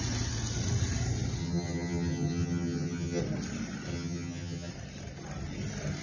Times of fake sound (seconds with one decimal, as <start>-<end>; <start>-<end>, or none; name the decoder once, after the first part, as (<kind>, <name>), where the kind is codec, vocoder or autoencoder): 1.4-3.2 (vocoder, HiFi-GAN); 3.9-4.7